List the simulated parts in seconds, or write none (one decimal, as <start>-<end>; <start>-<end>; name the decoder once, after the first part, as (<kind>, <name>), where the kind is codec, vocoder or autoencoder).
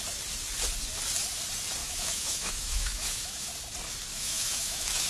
1.8-3.5 (autoencoder, DAC-VAE); 4.1-5.1